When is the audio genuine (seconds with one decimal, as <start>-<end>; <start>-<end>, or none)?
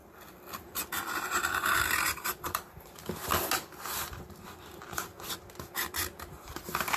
0.0-0.9; 3.3-4.1; 5.1-6.4